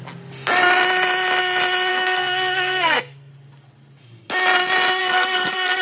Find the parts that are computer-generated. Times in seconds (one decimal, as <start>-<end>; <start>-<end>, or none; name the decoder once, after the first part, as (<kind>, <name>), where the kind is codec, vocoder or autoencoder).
1.9-3.3 (codec, SNAC); 5.0-5.8